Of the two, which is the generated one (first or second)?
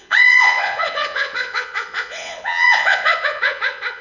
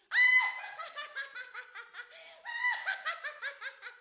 first